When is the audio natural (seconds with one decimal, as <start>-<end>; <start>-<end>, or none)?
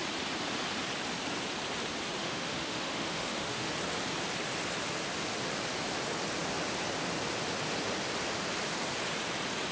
0.0-2.2; 3.7-9.7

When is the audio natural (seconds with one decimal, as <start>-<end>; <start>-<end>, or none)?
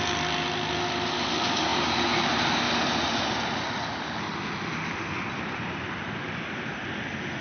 0.0-7.4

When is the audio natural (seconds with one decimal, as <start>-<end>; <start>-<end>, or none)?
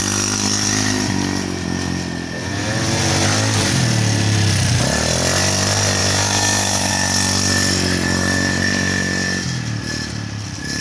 0.0-6.0; 6.9-10.8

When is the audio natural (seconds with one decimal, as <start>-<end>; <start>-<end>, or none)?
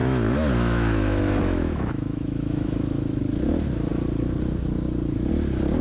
3.2-5.8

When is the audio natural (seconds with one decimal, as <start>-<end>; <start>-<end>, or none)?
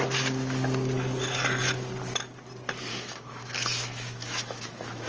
0.0-2.9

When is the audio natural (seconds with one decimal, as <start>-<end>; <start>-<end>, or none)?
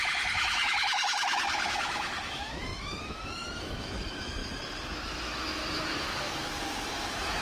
4.4-5.2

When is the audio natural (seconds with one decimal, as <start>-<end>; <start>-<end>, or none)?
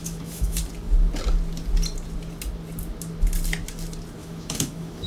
0.6-4.2